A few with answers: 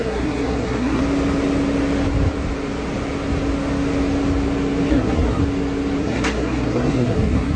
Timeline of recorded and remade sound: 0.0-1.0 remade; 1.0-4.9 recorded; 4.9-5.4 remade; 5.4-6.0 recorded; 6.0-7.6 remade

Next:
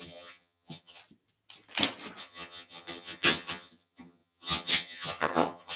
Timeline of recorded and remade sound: 0.0-1.0 remade; 1.0-2.2 recorded; 2.2-5.8 remade

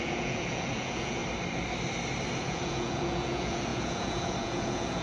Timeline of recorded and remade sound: 0.0-1.2 remade; 1.2-2.4 recorded; 2.4-5.0 remade

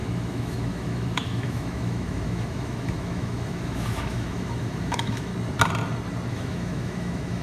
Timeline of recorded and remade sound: 0.0-5.3 remade; 5.3-6.3 recorded; 6.3-7.4 remade